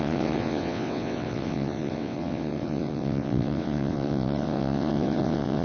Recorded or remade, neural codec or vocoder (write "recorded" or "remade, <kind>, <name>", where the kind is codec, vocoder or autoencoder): remade, vocoder, WaveNeXt